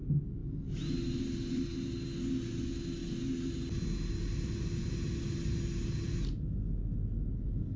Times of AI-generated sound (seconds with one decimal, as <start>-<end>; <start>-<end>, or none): none